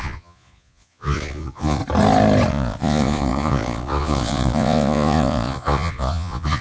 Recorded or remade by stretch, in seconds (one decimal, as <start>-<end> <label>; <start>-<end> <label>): 0.0-1.8 remade; 1.8-2.5 recorded; 2.5-6.6 remade

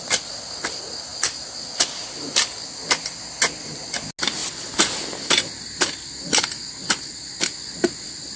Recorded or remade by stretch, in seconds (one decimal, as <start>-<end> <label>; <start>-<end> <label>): 0.0-8.4 recorded

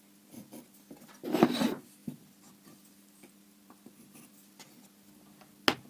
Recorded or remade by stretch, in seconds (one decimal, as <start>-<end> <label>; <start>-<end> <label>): 0.0-5.9 recorded

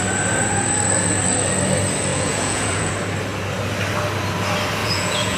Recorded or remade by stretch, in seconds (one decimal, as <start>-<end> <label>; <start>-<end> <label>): 0.0-2.1 recorded; 2.1-2.9 remade; 2.9-4.8 recorded; 4.8-5.4 remade